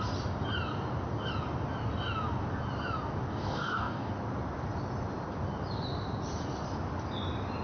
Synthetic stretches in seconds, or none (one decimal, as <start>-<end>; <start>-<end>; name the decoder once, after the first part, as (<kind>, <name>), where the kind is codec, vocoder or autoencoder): 3.3-4.1 (codec, DAC)